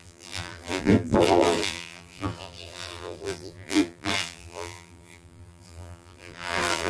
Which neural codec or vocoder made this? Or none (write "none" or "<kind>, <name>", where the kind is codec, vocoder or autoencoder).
vocoder, BigVGAN v2